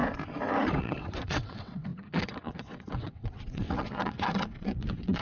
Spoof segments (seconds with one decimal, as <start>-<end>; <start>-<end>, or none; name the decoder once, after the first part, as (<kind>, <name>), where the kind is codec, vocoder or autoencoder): 0.8-5.2 (vocoder, WaveNeXt)